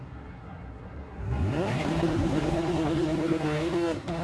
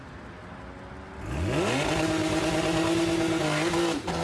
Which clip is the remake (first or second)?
first